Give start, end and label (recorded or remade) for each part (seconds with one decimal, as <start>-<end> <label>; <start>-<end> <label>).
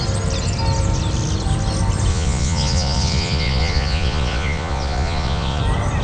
0.0-2.1 recorded; 2.1-5.6 remade; 5.6-6.0 recorded